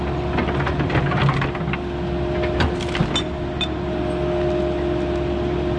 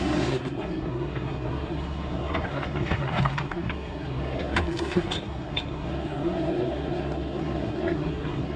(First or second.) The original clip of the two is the first